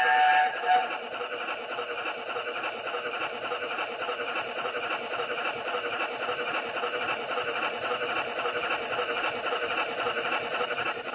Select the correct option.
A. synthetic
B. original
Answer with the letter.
A